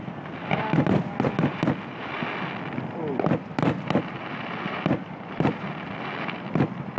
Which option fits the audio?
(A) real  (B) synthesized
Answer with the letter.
A